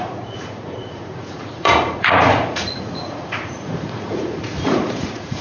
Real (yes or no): no